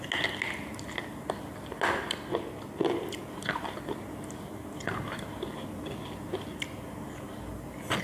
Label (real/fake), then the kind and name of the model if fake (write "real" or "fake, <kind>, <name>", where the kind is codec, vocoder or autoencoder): real